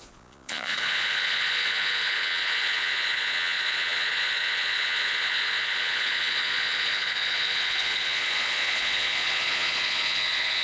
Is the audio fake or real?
fake